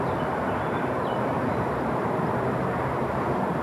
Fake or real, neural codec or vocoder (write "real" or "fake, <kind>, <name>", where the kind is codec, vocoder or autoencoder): real